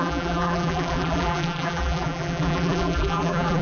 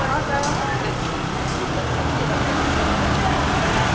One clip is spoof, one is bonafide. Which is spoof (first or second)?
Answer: first